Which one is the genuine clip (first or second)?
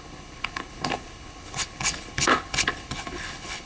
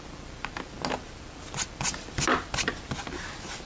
second